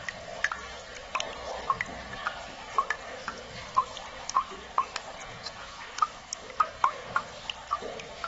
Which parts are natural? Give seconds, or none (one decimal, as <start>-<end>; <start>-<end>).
0.0-5.2; 5.8-8.3

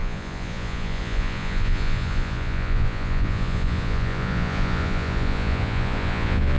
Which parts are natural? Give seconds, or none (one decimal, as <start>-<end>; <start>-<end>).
none